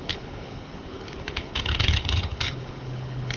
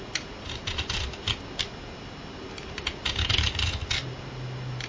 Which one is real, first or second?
second